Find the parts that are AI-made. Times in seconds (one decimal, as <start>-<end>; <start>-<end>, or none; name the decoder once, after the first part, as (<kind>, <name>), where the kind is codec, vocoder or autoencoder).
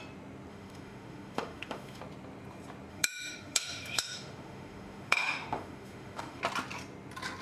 0.5-2.0 (autoencoder, DAC-VAE); 2.9-6.4